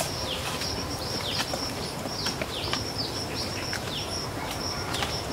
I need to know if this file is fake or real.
fake